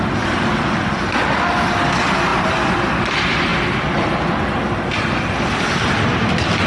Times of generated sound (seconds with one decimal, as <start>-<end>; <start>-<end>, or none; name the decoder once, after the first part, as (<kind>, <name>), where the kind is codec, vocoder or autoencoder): none